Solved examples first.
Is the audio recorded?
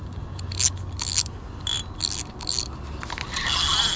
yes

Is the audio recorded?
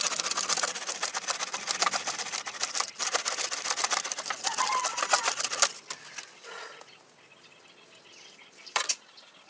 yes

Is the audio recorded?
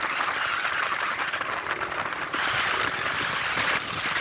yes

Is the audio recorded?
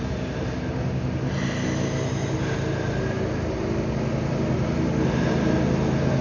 yes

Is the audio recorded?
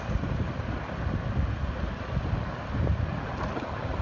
yes